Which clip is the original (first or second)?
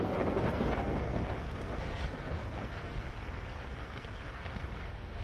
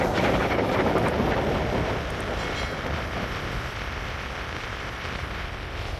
second